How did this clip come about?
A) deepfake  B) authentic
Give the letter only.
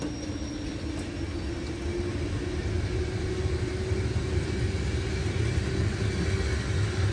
B